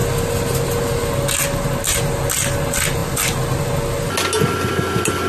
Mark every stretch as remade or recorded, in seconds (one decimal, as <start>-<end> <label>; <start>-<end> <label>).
0.0-5.3 recorded

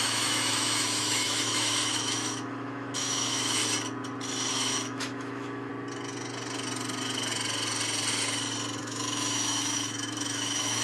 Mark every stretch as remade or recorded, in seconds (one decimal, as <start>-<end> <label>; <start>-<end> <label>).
0.0-3.6 remade; 3.6-4.5 recorded; 4.5-5.7 remade; 5.7-8.8 recorded; 8.8-10.8 remade

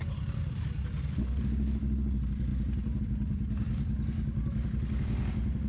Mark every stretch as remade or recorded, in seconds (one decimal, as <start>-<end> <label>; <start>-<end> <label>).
0.0-2.5 recorded; 2.5-3.0 remade; 3.0-5.7 recorded

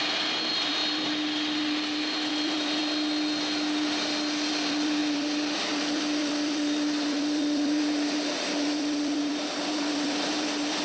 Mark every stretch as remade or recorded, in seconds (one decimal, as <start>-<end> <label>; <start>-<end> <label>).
0.0-0.8 remade; 0.8-2.3 recorded; 2.3-2.8 remade; 2.8-4.5 recorded; 4.5-10.8 remade